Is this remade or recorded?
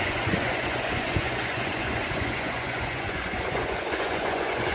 remade